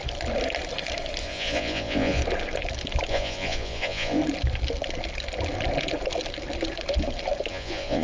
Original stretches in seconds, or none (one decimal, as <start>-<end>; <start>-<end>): 0.0-1.2; 2.2-3.1; 4.2-7.5